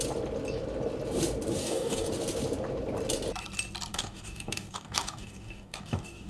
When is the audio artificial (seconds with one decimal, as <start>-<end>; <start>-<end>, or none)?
1.6-2.1; 3.9-6.3